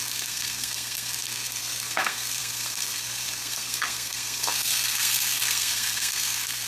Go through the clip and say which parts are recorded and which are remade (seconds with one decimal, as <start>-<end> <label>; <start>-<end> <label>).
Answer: 0.0-6.7 remade